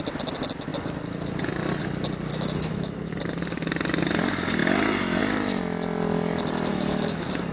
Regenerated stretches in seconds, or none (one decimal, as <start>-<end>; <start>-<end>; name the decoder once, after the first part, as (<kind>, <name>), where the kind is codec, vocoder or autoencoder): 2.3-3.1 (autoencoder, DAC-VAE); 6.7-7.5